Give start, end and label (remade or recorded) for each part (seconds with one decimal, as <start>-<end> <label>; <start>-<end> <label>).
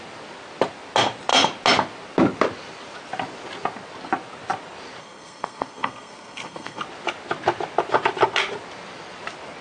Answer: 0.0-5.0 recorded; 5.0-6.8 remade; 6.8-9.6 recorded